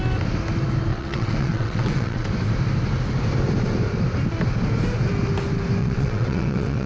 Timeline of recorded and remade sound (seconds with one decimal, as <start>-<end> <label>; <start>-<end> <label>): 0.0-0.9 recorded; 0.9-2.3 remade; 2.3-5.8 recorded; 5.8-6.9 remade